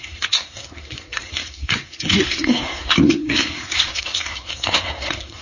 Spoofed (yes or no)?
yes